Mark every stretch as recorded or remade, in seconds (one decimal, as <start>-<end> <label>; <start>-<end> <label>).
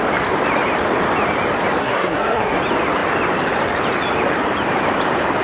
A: 0.0-1.8 recorded; 1.8-2.6 remade; 2.6-5.4 recorded